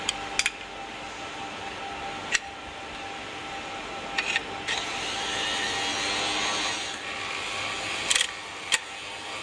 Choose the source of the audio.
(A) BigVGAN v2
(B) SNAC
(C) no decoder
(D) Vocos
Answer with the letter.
C